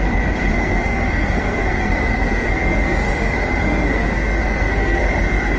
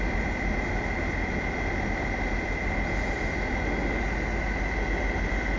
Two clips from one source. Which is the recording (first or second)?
second